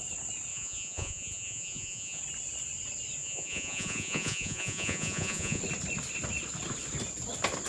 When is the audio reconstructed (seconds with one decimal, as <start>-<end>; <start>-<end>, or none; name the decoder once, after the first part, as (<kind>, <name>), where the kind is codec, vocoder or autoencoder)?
0.5-2.2 (vocoder, Vocos); 3.2-5.6